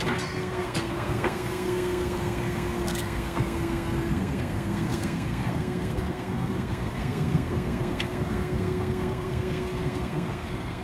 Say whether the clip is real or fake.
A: fake